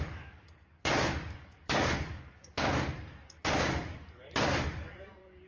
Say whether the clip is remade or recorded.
remade